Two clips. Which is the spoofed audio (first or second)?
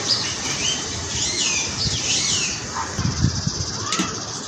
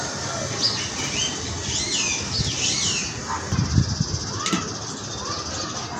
first